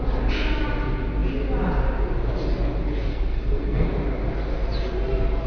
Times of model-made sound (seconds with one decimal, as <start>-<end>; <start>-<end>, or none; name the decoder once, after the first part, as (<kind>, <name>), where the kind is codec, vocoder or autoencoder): 3.1-3.9 (codec, SNAC)